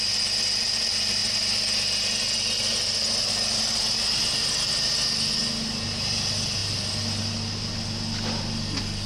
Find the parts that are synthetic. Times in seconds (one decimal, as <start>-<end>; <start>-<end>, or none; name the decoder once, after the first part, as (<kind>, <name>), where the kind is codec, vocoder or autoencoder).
none